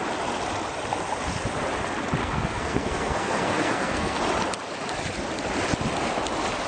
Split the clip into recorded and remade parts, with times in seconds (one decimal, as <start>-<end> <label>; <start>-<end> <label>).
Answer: 0.0-2.2 recorded; 2.2-4.2 remade; 4.2-6.7 recorded